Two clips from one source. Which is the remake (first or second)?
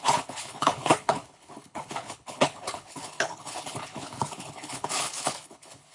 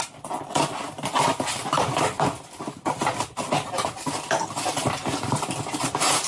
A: first